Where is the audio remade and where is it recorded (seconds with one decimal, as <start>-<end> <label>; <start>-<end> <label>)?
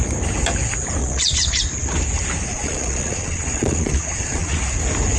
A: 0.0-1.0 recorded; 1.0-1.6 remade; 1.6-2.5 recorded; 2.5-4.6 remade; 4.6-5.2 recorded